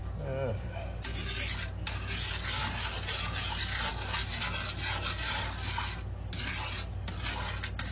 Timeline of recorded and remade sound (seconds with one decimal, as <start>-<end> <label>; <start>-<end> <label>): 0.0-7.9 recorded